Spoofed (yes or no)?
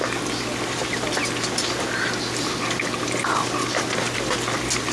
no